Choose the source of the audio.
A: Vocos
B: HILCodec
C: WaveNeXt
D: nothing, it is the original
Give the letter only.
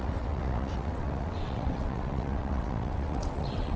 C